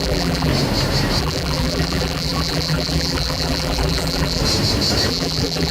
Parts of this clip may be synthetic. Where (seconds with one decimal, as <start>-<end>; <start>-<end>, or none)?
0.0-0.5; 1.2-4.4; 5.1-5.7